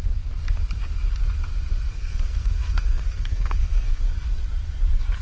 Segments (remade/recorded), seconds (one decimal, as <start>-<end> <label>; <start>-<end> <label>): 0.0-1.9 recorded; 1.9-4.0 remade; 4.0-5.2 recorded